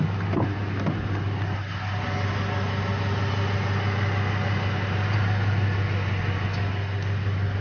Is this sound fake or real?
real